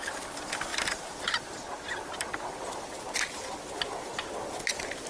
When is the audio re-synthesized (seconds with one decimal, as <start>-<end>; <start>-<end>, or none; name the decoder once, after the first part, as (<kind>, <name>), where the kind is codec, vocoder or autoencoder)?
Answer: none